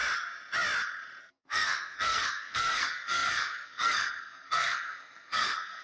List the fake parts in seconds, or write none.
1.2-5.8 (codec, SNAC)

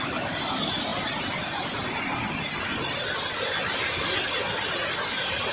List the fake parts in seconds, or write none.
none

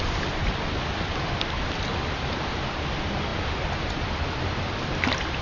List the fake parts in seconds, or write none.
none

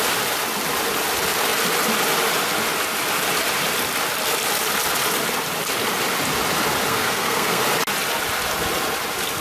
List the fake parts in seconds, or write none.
6.9-7.6 (codec, SNAC)

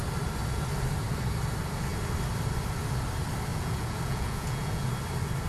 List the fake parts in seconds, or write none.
3.5-4.9 (vocoder, Vocos)